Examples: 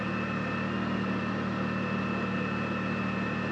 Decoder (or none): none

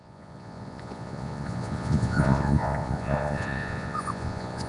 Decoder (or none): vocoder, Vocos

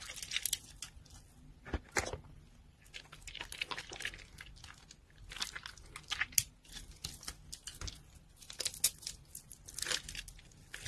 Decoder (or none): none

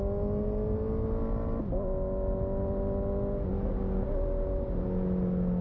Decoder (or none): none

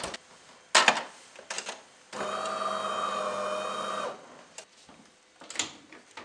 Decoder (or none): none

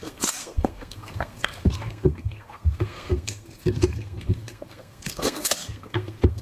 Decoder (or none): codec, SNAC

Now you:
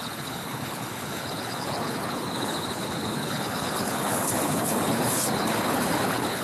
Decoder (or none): codec, HILCodec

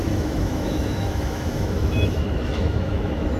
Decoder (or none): autoencoder, DAC-VAE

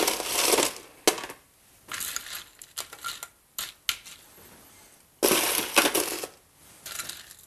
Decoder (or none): none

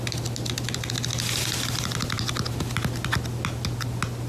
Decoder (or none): none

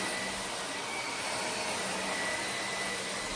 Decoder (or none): none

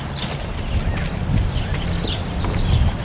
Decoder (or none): none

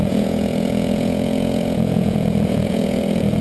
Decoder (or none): vocoder, Vocos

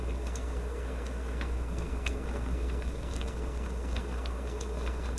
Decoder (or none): codec, SNAC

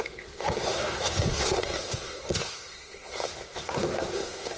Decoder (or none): codec, SNAC